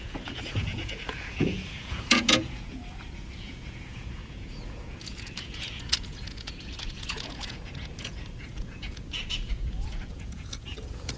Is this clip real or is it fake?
fake